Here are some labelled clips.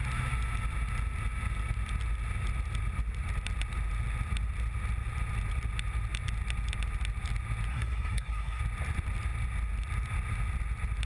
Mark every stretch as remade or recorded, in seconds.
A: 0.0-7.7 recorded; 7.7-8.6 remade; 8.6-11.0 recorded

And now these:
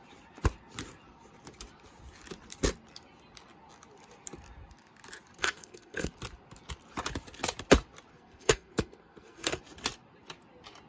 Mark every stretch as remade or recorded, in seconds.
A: 0.0-5.4 recorded; 5.4-6.1 remade; 6.1-8.1 recorded; 8.1-9.6 remade; 9.6-10.9 recorded

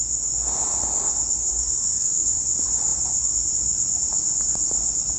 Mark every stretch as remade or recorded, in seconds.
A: 0.0-1.4 recorded; 1.4-2.4 remade; 2.4-5.2 recorded